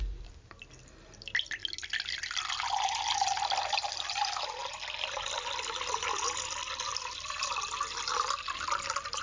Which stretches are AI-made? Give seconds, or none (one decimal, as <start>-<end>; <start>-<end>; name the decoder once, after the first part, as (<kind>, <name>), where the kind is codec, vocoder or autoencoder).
none